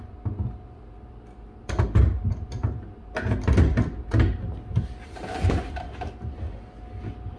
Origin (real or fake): real